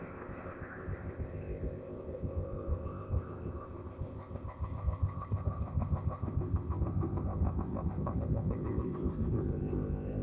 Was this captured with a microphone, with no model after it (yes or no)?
no